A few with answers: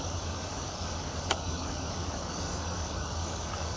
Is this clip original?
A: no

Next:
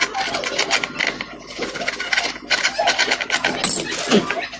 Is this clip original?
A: yes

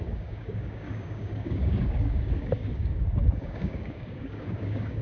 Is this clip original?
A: no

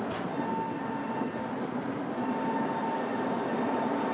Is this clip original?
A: yes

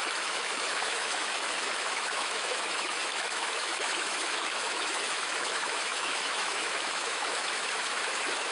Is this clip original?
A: no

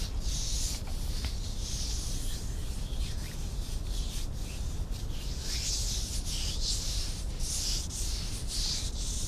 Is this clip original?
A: yes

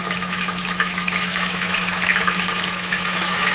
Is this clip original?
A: no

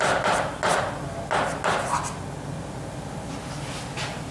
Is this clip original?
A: yes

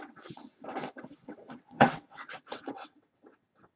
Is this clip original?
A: no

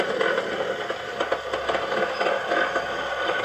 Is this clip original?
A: yes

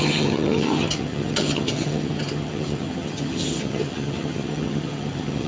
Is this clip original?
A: no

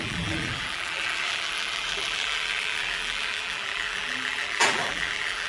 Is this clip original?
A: no